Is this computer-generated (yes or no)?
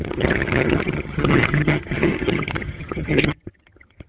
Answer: yes